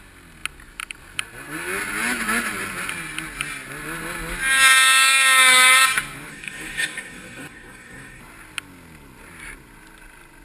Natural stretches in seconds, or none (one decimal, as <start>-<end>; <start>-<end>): 0.0-6.3; 8.2-10.4